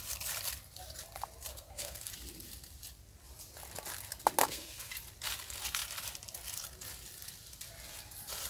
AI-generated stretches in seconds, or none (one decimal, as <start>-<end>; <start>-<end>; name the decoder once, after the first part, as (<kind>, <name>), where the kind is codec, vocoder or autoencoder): 1.5-2.1 (codec, SNAC); 4.4-4.9